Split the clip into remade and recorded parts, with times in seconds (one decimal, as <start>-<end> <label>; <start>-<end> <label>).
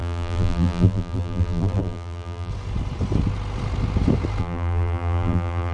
0.0-2.5 remade; 2.5-4.4 recorded; 4.4-5.7 remade